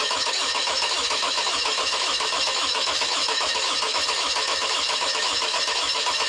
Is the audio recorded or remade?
remade